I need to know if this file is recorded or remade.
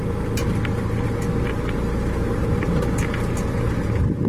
recorded